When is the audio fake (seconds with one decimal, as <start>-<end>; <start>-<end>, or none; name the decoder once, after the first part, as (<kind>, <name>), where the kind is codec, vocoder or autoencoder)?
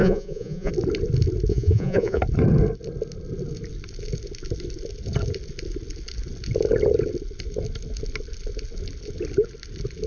0.0-0.7 (vocoder, Vocos); 1.5-2.2